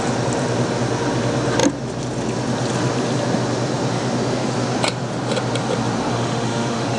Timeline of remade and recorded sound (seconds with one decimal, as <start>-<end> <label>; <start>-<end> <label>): 0.0-6.1 recorded; 6.1-7.0 remade